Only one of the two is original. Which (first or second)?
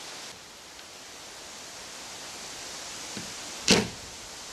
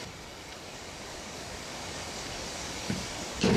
first